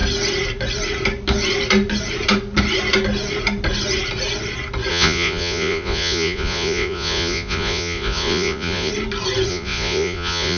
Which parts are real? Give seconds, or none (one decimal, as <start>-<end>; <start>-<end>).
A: 0.0-4.9; 8.9-9.5